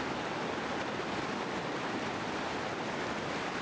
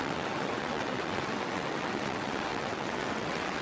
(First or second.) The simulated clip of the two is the second